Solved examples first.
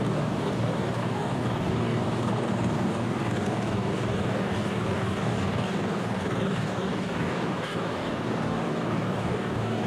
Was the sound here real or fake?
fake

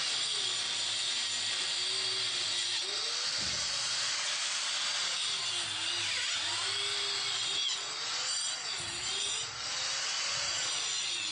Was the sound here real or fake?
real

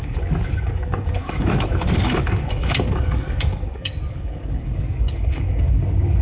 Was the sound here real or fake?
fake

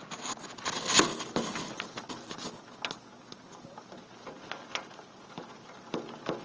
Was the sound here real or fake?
real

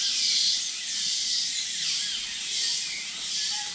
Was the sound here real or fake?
real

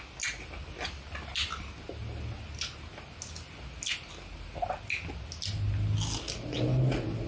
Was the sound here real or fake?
real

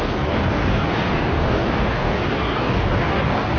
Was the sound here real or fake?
fake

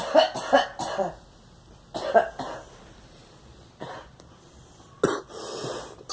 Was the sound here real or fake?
real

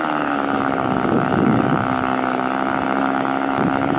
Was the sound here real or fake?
fake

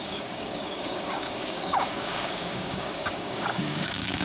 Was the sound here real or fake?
fake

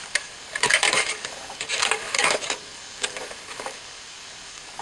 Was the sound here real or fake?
fake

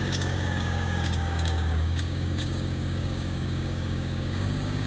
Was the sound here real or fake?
fake